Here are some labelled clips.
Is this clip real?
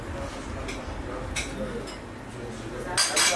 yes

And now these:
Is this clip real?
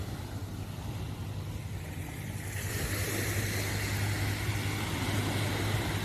yes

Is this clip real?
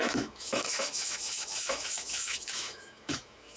no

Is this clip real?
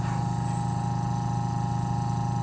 yes